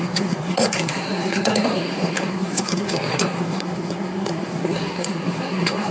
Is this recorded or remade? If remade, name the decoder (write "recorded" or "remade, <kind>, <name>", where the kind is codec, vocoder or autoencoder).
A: remade, codec, SNAC